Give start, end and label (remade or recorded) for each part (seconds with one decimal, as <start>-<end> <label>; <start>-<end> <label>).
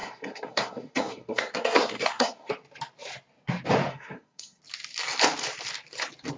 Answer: 0.0-2.5 remade; 2.5-3.9 recorded; 3.9-4.6 remade; 4.6-6.4 recorded